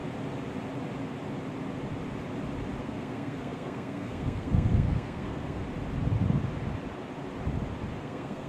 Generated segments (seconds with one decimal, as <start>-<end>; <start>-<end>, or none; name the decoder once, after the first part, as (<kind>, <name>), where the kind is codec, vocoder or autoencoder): 2.8-5.6 (codec, SNAC); 8.0-8.5